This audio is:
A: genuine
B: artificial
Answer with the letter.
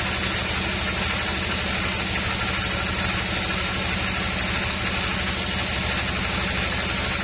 A